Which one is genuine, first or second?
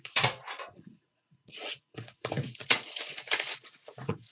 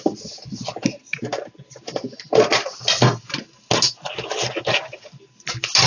second